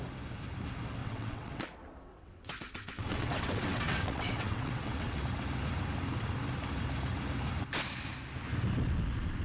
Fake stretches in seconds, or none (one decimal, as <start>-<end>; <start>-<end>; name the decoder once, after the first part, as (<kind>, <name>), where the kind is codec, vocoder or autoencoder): 1.0-1.6 (vocoder, WaveNeXt); 2.1-5.2